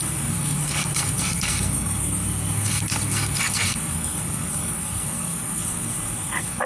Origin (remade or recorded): remade